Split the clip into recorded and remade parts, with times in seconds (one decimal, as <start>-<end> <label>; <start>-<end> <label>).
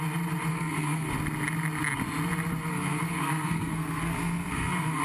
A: 0.0-0.5 recorded; 0.5-1.1 remade; 1.1-2.7 recorded; 2.7-5.0 remade